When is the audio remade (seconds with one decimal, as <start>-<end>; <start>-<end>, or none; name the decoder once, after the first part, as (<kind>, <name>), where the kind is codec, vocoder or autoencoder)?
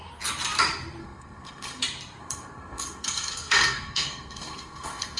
1.0-1.8 (codec, SNAC); 2.2-5.2